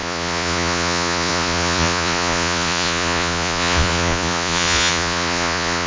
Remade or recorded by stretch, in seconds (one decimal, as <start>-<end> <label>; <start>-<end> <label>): 0.0-5.9 remade